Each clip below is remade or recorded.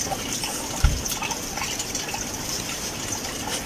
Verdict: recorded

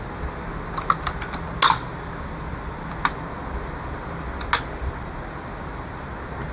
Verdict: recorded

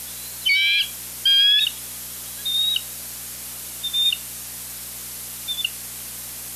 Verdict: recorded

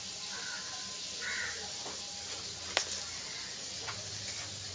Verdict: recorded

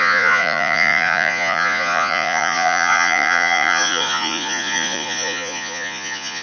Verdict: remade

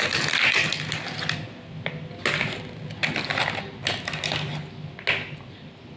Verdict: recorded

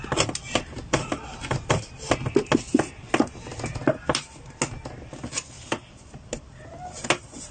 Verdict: recorded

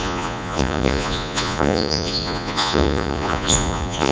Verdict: remade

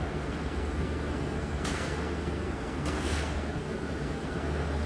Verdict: remade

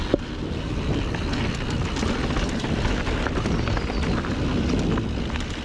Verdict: recorded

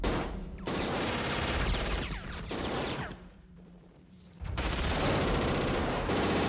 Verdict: remade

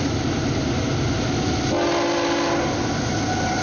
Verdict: recorded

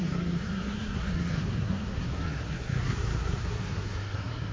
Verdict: remade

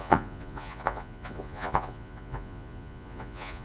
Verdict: remade